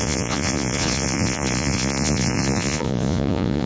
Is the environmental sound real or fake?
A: fake